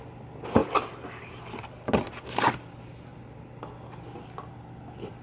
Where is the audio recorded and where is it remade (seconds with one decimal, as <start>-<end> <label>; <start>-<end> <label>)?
0.0-5.2 recorded